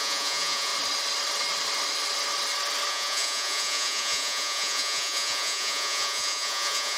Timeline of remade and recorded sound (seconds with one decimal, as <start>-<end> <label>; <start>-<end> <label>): 0.0-0.7 remade; 0.7-2.9 recorded; 2.9-7.0 remade